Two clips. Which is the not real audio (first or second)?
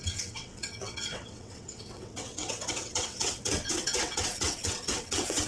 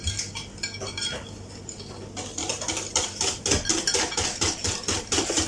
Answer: first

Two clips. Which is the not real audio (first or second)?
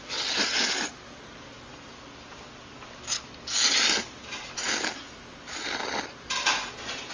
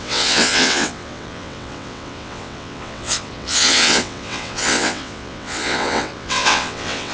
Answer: second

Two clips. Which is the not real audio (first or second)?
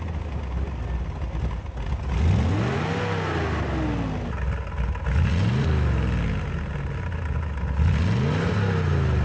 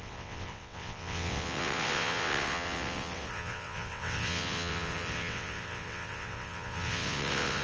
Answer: second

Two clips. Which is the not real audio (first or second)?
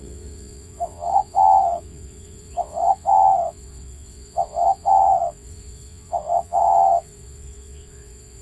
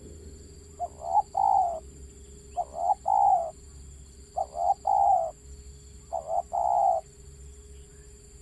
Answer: first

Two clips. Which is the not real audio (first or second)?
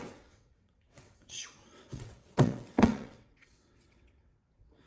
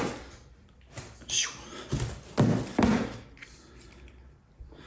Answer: first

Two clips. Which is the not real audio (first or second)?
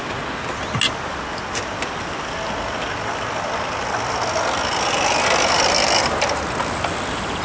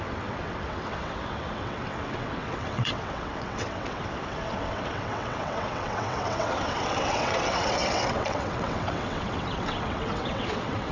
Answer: second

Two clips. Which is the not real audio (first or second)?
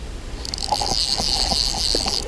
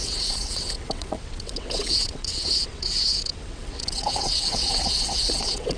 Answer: second